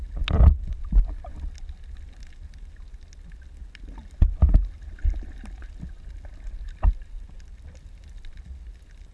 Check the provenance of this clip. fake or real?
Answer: real